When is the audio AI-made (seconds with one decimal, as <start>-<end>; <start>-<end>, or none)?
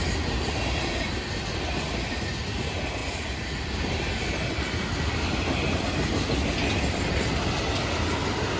none